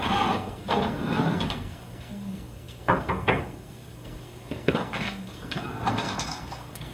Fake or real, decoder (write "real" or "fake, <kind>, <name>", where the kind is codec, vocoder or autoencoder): fake, codec, SNAC